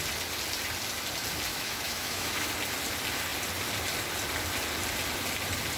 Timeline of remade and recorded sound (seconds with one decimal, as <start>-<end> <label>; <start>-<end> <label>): 0.0-1.5 recorded; 1.5-2.5 remade; 2.5-5.8 recorded